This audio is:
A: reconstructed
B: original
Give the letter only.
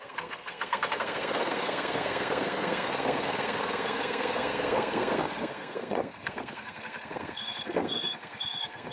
A